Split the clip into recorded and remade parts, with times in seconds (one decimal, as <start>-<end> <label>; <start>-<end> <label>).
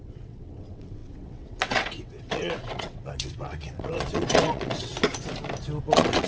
0.0-4.9 remade; 4.9-5.8 recorded; 5.8-6.3 remade